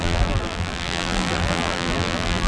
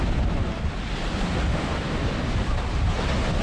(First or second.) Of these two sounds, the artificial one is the first